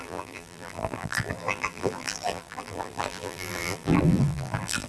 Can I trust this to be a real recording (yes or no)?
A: no